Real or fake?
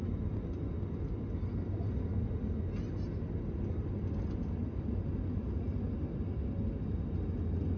real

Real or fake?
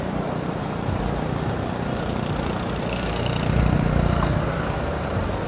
fake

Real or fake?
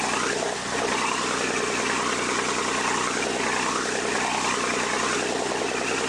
real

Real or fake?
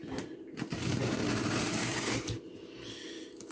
real